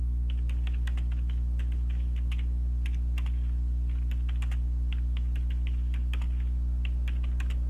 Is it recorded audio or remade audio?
recorded